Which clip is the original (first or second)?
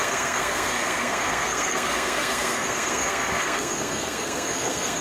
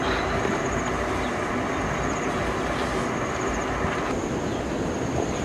second